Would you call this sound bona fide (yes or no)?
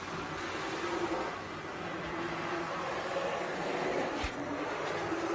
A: yes